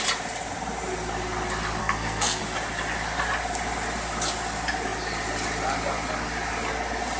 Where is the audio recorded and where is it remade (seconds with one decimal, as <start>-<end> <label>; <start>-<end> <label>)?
0.0-1.8 recorded; 1.8-2.4 remade; 2.4-7.2 recorded

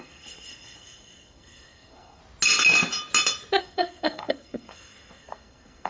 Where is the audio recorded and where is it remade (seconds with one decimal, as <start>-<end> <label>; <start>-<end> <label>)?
0.0-2.2 remade; 2.2-3.6 recorded; 3.6-5.9 remade

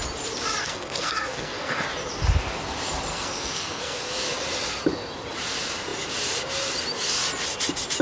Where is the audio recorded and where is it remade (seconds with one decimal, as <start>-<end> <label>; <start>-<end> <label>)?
0.0-0.6 recorded; 0.6-1.9 remade; 1.9-3.1 recorded; 3.1-4.0 remade; 4.0-8.0 recorded

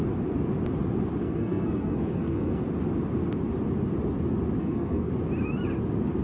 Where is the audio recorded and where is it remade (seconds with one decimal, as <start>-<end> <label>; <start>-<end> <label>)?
0.0-1.2 recorded; 1.2-2.6 remade; 2.6-4.6 recorded; 4.6-5.1 remade; 5.1-6.2 recorded